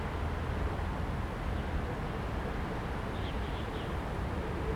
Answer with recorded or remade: recorded